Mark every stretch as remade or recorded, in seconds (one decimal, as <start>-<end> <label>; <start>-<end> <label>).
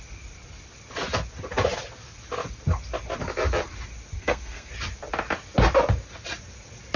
0.0-4.2 recorded; 4.2-4.7 remade; 4.7-7.0 recorded